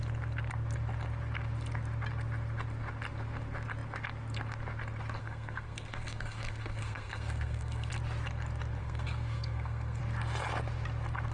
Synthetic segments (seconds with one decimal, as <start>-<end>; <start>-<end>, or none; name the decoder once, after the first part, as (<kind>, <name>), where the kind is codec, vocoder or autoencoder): 5.2-7.9 (codec, SNAC); 8.8-10.0